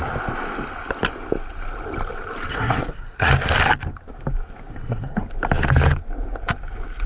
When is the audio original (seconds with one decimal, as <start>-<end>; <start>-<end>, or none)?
0.0-2.5; 3.3-4.7; 5.2-7.1